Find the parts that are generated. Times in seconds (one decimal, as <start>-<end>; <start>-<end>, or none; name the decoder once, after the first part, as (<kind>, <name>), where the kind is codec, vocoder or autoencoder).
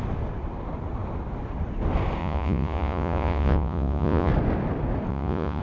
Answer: 2.2-4.3 (vocoder, Vocos); 5.1-5.6